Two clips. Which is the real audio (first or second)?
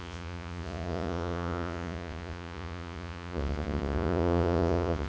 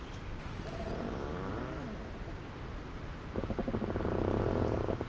second